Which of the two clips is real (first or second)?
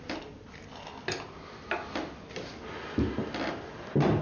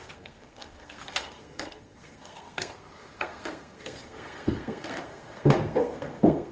first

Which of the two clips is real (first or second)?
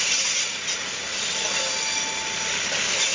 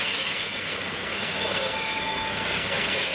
first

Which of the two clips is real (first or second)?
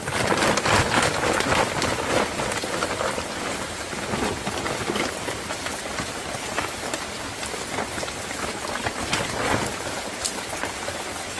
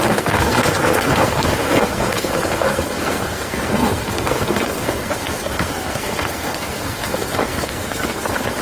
first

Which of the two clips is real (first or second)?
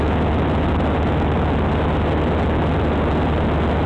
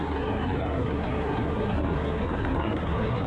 first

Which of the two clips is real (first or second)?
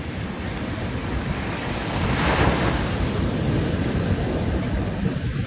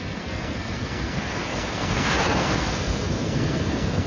first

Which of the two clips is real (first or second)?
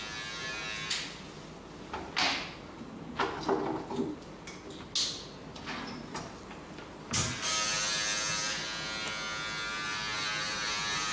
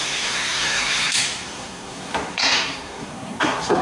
first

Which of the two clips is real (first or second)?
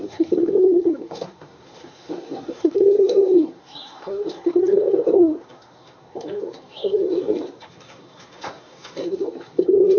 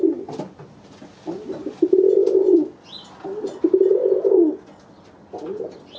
second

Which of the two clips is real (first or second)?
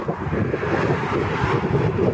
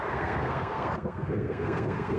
first